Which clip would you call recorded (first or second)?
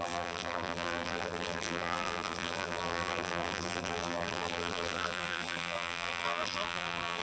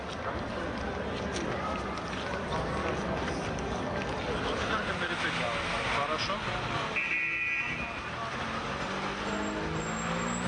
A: second